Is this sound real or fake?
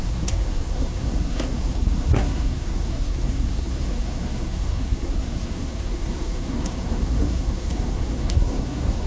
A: fake